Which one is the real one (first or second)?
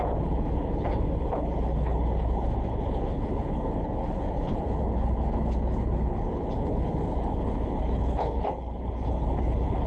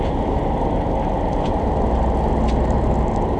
second